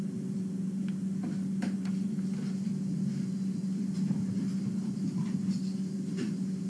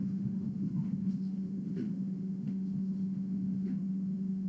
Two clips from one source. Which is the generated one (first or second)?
second